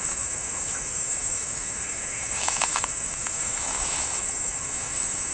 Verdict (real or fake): fake